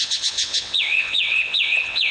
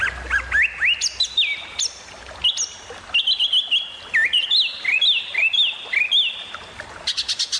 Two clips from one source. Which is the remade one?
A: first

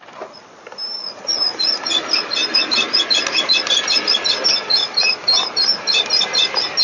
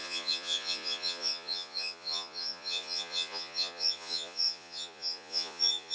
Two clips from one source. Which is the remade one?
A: second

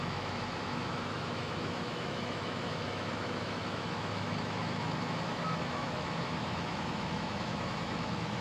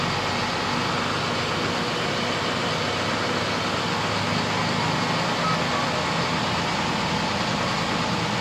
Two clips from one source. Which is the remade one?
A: first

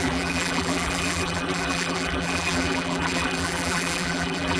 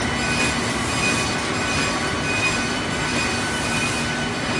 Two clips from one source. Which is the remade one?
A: first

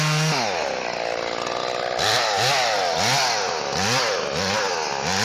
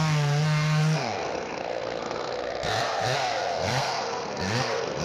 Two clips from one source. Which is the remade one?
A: second